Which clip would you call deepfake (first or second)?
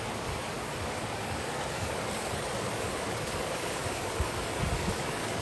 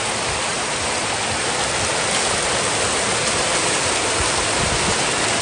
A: first